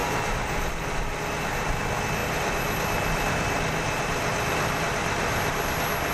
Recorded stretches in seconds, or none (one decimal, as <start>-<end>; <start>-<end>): 0.0-6.1